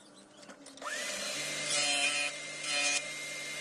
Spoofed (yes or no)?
no